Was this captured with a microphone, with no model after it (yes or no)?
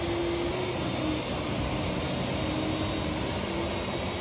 yes